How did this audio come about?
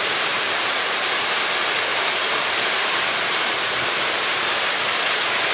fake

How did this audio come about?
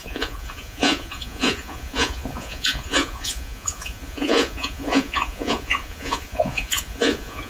fake